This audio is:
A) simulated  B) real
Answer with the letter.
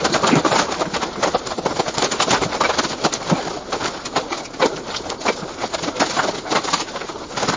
B